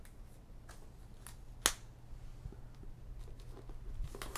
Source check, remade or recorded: recorded